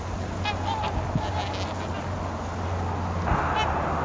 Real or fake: real